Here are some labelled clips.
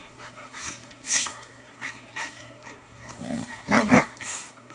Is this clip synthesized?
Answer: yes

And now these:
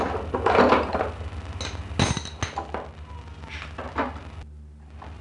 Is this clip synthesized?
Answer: no